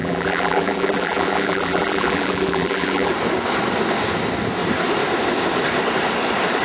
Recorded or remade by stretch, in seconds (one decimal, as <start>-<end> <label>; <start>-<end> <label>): 0.0-3.1 remade; 3.1-6.6 recorded